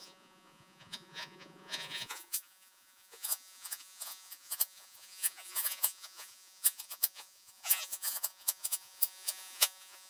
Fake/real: fake